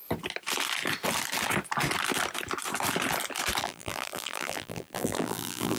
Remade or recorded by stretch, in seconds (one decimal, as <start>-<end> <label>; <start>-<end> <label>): 0.0-3.6 recorded; 3.6-5.8 remade